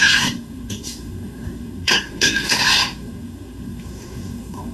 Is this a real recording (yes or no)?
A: no